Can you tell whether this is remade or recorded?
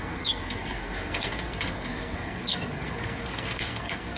remade